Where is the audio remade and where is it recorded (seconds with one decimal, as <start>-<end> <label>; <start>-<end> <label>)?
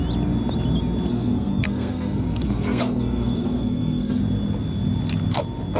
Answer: 0.0-1.1 recorded; 1.1-4.2 remade; 4.2-5.8 recorded